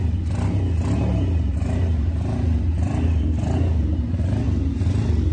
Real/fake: real